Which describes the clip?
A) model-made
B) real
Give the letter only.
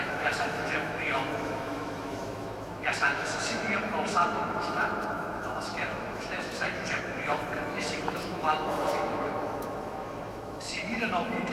A